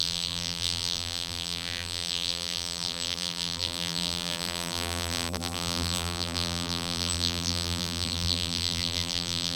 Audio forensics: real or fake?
fake